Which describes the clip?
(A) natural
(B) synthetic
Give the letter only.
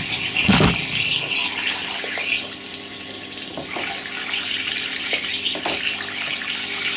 A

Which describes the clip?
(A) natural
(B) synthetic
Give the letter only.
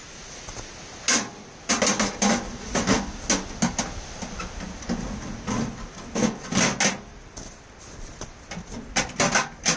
A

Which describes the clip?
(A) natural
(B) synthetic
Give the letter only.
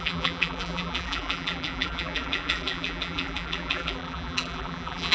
B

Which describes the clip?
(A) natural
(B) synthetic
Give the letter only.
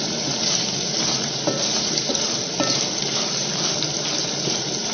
B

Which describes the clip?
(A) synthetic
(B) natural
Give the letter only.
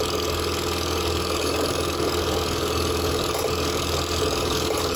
A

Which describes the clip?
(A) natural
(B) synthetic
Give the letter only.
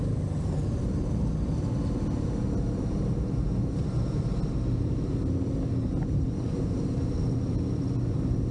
A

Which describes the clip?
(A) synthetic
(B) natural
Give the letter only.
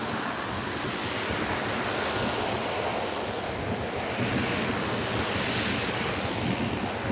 B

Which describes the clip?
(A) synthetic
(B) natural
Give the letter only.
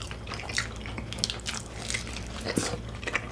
B